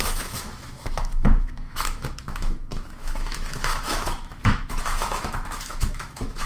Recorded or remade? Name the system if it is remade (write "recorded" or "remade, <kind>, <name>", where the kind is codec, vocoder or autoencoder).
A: remade, autoencoder, DAC-VAE